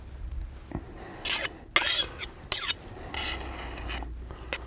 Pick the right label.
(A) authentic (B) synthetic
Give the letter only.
A